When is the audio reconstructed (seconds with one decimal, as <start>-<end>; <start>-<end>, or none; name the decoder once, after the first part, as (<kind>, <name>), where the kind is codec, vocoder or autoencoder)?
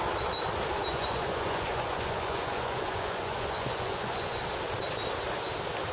0.9-4.4 (vocoder, Vocos)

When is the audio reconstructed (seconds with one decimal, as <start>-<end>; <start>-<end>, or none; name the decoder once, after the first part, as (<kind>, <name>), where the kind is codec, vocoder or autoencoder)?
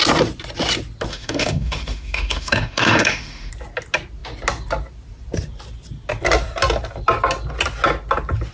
1.1-3.5 (autoencoder, DAC-VAE)